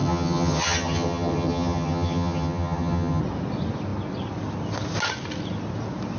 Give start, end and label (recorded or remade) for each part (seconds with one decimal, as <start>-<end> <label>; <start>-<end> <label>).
0.0-3.2 remade; 3.2-6.2 recorded